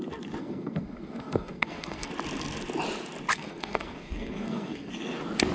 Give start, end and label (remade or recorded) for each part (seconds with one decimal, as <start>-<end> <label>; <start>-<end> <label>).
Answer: 0.0-0.4 recorded; 0.4-2.1 remade; 2.1-3.3 recorded; 3.3-4.9 remade; 4.9-5.5 recorded